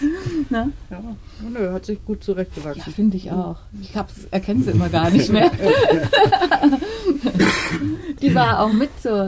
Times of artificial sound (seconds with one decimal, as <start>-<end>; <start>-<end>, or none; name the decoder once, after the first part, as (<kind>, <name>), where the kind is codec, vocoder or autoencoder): 1.5-2.8 (autoencoder, DAC-VAE); 4.2-5.4; 6.0-7.4